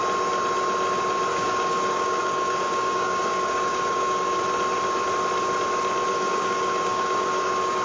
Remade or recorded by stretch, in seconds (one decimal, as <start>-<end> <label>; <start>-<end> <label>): 0.0-1.3 recorded; 1.3-4.4 remade; 4.4-6.1 recorded; 6.1-7.8 remade